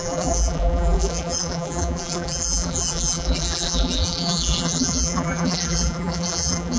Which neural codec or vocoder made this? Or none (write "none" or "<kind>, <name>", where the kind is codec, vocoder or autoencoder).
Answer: vocoder, BigVGAN v2